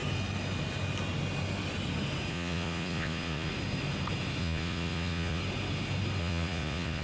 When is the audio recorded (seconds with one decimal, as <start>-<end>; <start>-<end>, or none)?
0.0-2.3; 3.5-4.4; 5.4-6.2